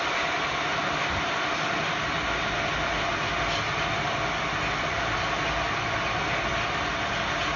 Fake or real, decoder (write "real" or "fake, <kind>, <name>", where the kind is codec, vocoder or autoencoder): real